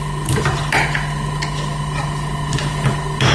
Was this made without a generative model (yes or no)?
yes